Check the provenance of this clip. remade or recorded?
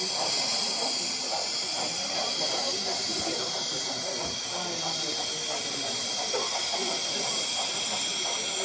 recorded